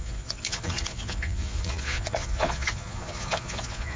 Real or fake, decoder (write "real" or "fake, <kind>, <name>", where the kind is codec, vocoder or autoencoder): fake, vocoder, Vocos